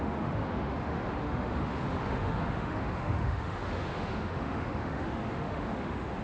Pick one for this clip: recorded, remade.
remade